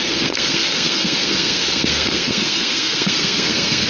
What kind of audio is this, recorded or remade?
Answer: remade